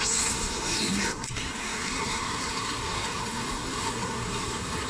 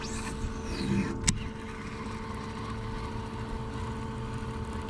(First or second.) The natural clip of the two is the second